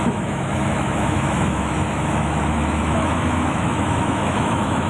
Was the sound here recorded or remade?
remade